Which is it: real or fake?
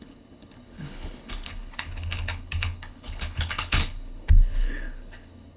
fake